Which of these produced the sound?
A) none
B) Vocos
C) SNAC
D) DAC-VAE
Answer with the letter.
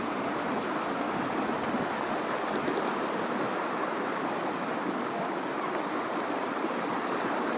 A